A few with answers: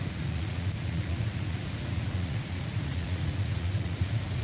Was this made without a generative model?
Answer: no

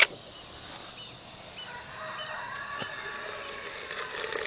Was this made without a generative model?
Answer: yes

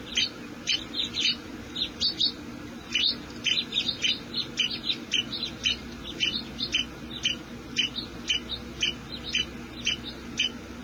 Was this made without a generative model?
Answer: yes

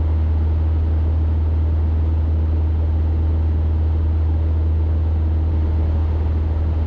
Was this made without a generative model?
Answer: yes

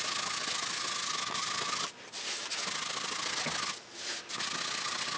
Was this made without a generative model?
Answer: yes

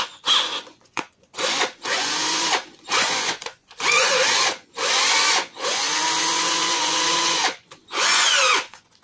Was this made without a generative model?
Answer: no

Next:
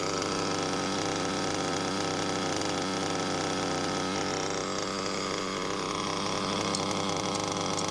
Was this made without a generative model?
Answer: yes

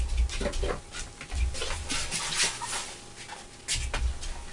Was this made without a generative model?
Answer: yes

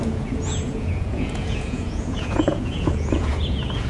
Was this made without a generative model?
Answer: no